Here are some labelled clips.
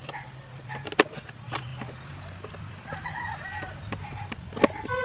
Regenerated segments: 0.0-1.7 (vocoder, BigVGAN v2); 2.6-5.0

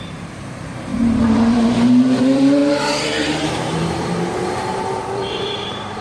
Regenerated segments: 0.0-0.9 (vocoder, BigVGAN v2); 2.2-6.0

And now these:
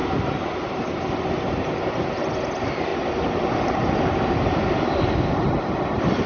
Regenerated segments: 0.0-2.9 (vocoder, BigVGAN v2)

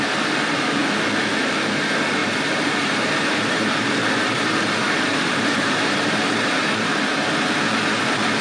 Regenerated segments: 2.2-7.0 (vocoder, BigVGAN v2)